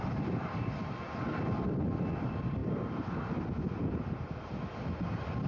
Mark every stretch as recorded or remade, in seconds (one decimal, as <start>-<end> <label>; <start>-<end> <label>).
0.0-5.5 recorded